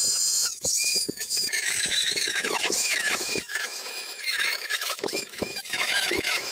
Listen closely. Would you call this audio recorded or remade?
remade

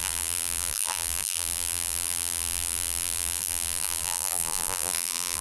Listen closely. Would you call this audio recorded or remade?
remade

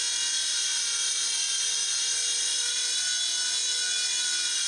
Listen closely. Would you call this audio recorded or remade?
recorded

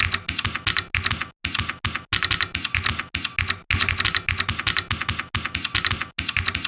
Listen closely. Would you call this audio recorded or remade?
recorded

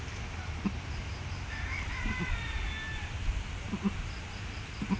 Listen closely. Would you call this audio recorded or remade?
recorded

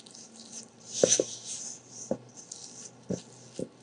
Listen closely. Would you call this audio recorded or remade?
recorded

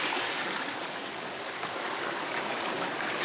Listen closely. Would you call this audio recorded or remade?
remade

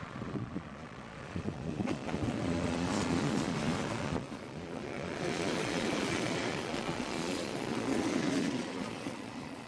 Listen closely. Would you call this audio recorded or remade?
remade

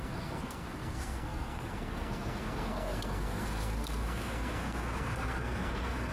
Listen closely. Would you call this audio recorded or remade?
remade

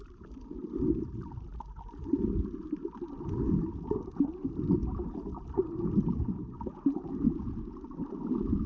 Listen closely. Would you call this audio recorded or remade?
recorded